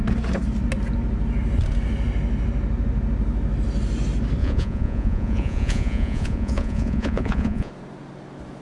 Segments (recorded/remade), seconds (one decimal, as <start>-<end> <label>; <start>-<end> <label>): 0.0-4.4 recorded; 4.4-7.7 remade; 7.7-8.6 recorded